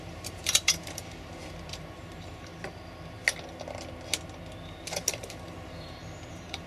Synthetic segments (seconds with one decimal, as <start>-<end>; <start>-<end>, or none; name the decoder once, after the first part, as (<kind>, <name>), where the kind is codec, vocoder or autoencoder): 0.0-2.5 (vocoder, BigVGAN v2); 5.1-6.7